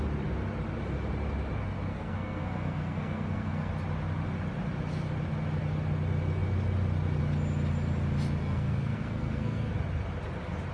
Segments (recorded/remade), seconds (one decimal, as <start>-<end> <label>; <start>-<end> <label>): 0.0-1.9 recorded; 1.9-3.7 remade; 3.7-8.4 recorded; 8.4-9.7 remade; 9.7-10.7 recorded